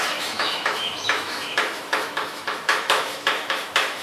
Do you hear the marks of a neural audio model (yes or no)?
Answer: yes